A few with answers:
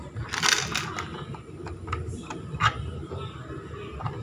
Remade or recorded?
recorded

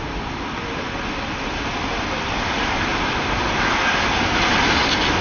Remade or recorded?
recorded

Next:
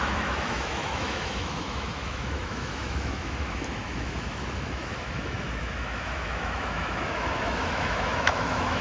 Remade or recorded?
remade